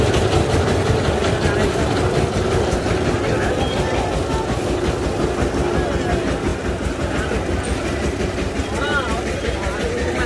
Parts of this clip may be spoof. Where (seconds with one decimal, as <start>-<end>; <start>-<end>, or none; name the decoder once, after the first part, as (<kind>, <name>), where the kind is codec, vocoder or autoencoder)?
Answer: 1.2-3.5 (vocoder, BigVGAN v2)